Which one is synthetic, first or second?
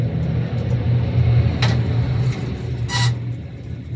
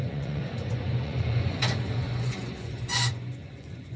second